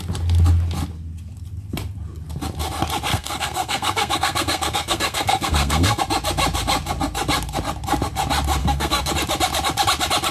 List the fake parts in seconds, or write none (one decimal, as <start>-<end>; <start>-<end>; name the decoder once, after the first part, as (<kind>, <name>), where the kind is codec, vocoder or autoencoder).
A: 3.1-6.0 (codec, SNAC); 8.6-9.1